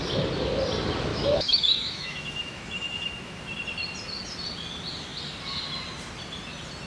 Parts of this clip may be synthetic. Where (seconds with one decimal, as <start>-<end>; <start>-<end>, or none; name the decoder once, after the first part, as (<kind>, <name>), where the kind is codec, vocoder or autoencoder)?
1.1-3.4 (autoencoder, DAC-VAE)